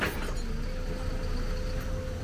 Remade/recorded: recorded